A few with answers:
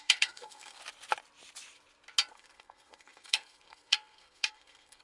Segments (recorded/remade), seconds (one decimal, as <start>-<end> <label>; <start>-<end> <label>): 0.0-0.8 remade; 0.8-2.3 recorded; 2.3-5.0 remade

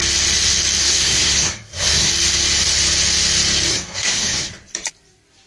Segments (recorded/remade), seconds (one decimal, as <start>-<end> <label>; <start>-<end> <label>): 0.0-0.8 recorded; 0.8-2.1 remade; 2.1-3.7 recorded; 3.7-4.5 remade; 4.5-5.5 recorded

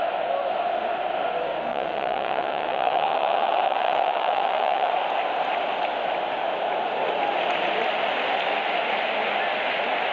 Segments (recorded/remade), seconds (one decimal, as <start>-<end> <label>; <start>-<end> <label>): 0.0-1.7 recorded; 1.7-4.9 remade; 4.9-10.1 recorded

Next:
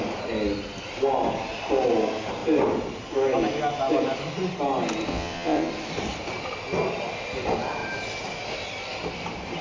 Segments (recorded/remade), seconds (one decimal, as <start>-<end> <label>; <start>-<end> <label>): 0.0-5.1 recorded; 5.1-5.7 remade; 5.7-9.6 recorded

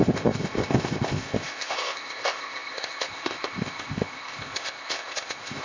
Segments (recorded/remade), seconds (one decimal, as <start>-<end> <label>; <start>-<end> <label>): 0.0-5.6 remade

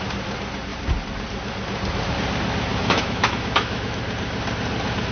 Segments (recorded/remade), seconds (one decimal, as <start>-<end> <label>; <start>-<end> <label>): 0.0-2.7 recorded; 2.7-4.0 remade; 4.0-5.1 recorded

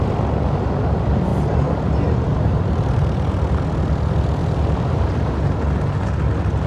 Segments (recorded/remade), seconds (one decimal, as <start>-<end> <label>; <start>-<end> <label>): 0.0-1.3 recorded; 1.3-3.3 remade; 3.3-4.4 recorded; 4.4-5.0 remade; 5.0-6.7 recorded

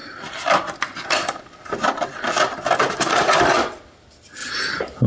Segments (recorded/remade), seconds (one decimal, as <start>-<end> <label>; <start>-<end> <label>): 0.0-2.9 remade; 2.9-5.1 recorded